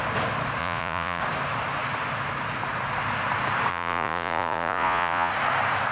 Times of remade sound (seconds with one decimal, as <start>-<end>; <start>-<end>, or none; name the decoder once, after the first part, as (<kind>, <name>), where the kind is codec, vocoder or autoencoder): 0.6-1.2 (vocoder, Vocos); 3.7-5.3